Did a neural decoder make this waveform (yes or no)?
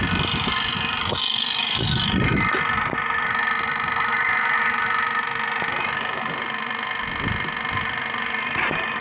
no